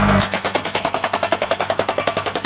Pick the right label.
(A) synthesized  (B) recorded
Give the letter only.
A